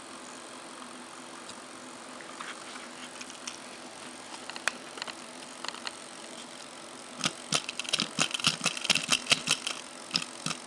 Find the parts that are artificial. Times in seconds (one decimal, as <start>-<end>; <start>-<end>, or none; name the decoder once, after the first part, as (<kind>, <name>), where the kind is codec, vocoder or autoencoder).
none